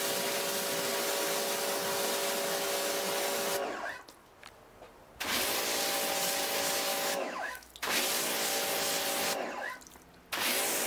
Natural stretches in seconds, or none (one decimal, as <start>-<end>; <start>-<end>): 0.0-6.9; 7.7-10.9